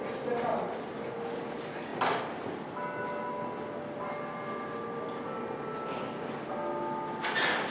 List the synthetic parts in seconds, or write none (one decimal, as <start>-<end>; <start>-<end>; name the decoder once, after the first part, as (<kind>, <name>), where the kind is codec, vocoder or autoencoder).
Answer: none